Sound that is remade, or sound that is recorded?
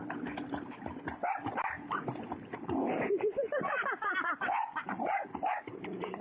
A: remade